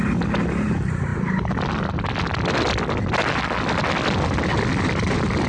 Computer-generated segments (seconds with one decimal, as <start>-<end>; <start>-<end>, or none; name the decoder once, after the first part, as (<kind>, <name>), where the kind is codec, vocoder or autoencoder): none